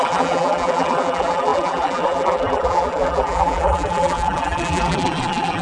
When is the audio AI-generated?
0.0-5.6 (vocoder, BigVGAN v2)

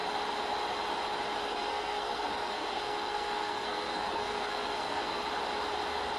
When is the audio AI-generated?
1.5-5.2 (codec, SNAC)